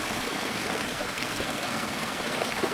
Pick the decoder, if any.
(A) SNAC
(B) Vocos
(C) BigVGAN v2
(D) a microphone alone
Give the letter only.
A